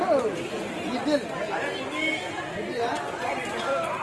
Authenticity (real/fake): real